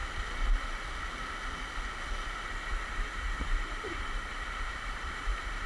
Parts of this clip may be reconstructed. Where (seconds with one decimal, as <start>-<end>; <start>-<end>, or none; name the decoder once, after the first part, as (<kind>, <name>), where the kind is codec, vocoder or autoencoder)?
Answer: 2.7-5.7 (vocoder, BigVGAN v2)